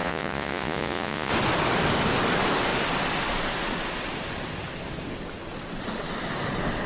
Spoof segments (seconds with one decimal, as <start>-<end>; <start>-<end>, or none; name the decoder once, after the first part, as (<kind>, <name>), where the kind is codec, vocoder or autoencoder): 0.0-1.3 (vocoder, Vocos)